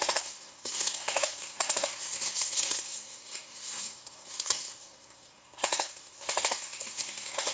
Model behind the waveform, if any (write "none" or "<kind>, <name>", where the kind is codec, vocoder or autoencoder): codec, SNAC